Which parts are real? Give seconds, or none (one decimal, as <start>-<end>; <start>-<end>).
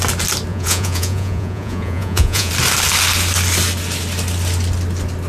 0.0-0.5; 2.5-5.3